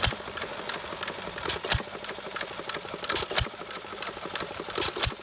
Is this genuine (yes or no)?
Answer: yes